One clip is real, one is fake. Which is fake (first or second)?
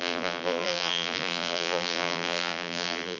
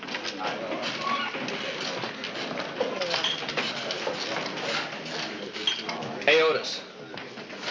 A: first